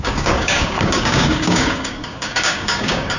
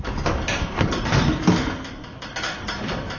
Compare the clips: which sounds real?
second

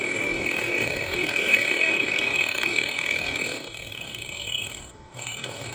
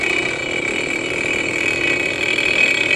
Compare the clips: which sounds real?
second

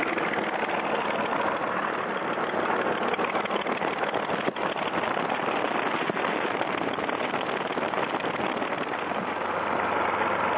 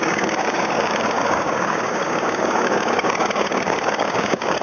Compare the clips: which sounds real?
first